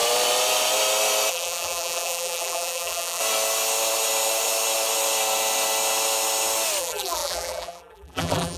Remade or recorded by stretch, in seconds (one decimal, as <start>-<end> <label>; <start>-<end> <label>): 0.0-1.3 recorded; 1.3-3.2 remade; 3.2-6.8 recorded; 6.8-8.6 remade